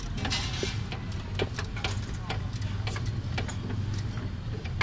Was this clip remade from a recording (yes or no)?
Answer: no